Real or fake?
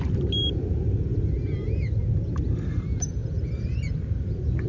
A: real